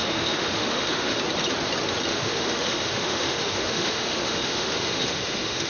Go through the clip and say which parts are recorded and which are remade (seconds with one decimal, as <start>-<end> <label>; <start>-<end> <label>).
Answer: 0.0-1.2 remade; 1.2-2.1 recorded; 2.1-5.7 remade